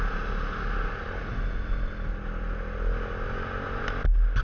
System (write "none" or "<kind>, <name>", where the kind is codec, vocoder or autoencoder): none